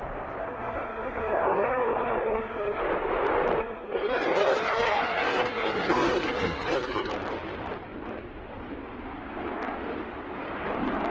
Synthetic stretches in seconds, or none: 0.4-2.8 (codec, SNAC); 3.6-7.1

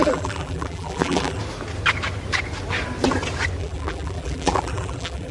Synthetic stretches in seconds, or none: 0.0-1.4 (vocoder, BigVGAN v2); 3.6-5.3

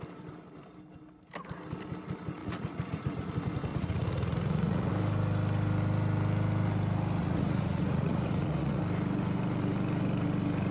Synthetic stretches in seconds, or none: 2.4-3.3 (vocoder, Vocos); 3.7-4.9; 7.2-8.8

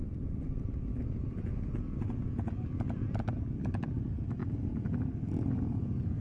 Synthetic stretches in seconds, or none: 0.0-1.5 (vocoder, BigVGAN v2); 3.4-4.4; 5.1-6.2

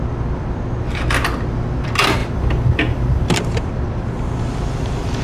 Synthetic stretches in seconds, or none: 2.2-5.2 (vocoder, BigVGAN v2)

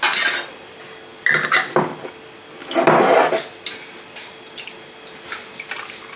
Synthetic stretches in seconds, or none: none

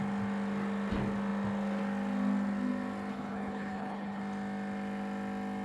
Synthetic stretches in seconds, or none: 3.1-4.2 (codec, HILCodec)